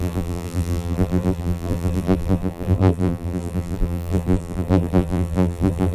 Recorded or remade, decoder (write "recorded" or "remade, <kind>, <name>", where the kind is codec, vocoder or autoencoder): remade, vocoder, BigVGAN v2